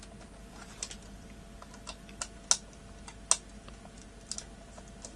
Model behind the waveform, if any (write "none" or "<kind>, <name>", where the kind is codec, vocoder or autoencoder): none